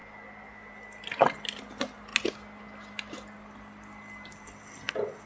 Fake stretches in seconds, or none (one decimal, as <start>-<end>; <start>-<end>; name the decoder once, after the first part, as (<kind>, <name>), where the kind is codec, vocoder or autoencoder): none